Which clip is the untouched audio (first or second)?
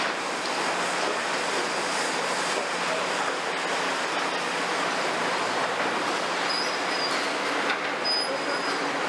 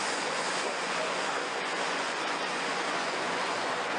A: first